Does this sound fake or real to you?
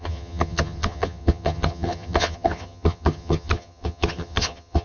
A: fake